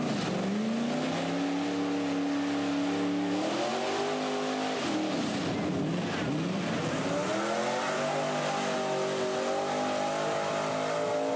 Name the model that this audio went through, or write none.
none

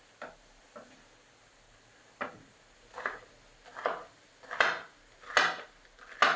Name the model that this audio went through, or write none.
none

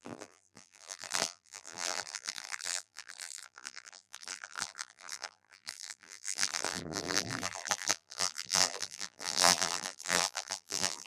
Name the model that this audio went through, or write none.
vocoder, BigVGAN v2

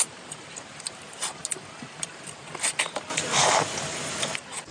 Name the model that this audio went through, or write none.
none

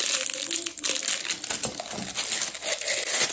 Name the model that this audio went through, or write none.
none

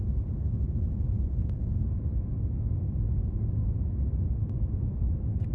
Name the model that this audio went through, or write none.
none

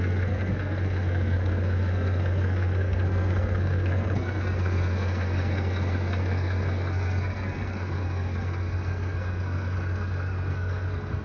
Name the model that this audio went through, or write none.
codec, SNAC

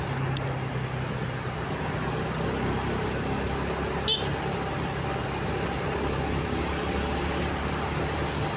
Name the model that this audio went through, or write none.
none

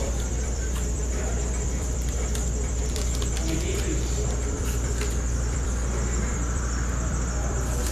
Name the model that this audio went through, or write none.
vocoder, BigVGAN v2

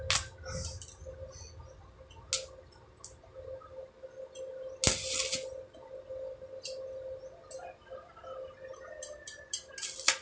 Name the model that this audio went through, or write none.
none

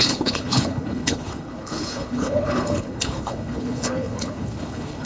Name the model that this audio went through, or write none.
codec, HILCodec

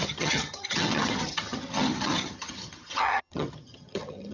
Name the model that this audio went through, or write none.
vocoder, HiFi-GAN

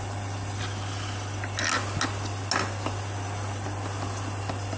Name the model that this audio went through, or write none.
none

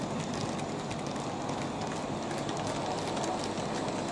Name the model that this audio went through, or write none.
none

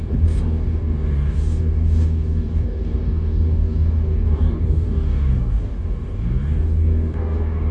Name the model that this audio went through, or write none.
codec, DAC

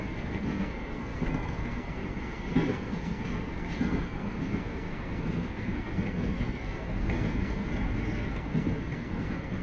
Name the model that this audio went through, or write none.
codec, SNAC